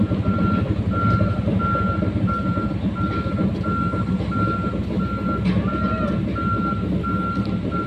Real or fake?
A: real